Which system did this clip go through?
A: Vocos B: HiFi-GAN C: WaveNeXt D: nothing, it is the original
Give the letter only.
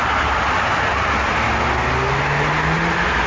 D